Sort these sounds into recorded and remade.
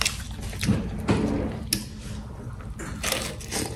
recorded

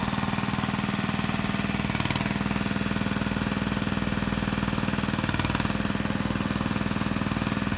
recorded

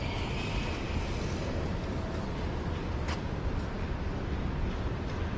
recorded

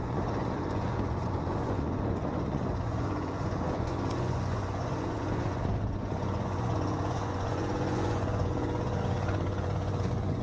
remade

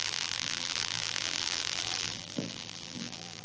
remade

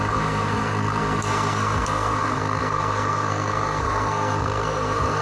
remade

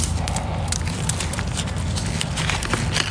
recorded